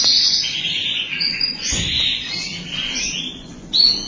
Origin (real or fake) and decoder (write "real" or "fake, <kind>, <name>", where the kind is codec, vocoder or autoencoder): fake, vocoder, Vocos